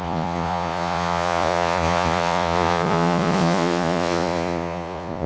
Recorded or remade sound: remade